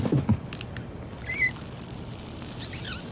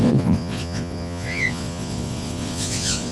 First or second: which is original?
first